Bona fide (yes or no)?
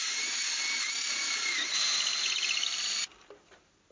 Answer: yes